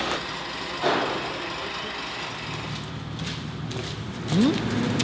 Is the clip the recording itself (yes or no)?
yes